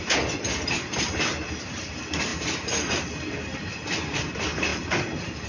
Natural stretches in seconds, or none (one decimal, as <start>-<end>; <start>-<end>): 2.3-2.9; 4.7-5.5